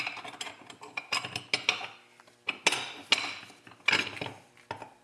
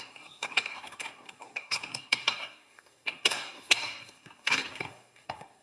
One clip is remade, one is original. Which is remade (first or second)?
second